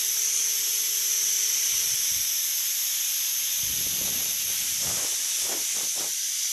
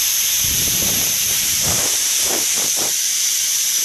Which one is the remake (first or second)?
second